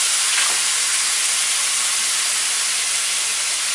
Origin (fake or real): real